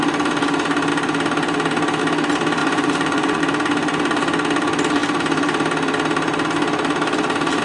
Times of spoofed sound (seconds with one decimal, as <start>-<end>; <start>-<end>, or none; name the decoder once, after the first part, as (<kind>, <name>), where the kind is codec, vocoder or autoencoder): 2.6-3.4 (vocoder, Vocos)